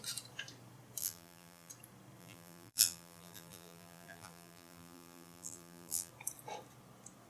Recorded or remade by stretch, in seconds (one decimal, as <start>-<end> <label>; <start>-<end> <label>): 0.0-1.0 recorded; 1.0-1.7 remade; 1.7-2.2 recorded; 2.2-6.1 remade; 6.1-7.3 recorded